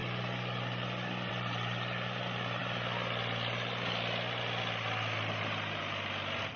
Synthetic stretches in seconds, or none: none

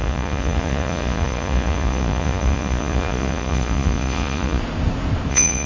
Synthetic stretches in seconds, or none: 0.0-4.6 (vocoder, Vocos); 5.3-5.7

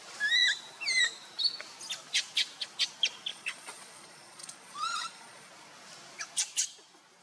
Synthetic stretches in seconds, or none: 3.3-5.5 (vocoder, Vocos)